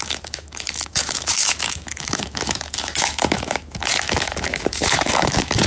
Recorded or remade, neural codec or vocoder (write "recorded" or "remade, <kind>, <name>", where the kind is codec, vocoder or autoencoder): remade, autoencoder, DAC-VAE